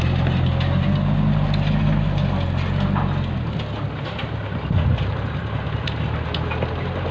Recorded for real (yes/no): yes